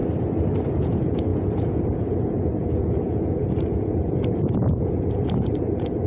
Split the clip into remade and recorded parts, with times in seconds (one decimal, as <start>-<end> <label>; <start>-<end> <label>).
0.0-0.7 recorded; 0.7-6.1 remade